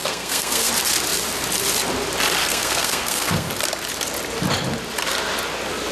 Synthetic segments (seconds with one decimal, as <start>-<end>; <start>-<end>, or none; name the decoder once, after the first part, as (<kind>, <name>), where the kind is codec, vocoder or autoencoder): 0.0-0.7 (codec, SNAC); 2.4-3.5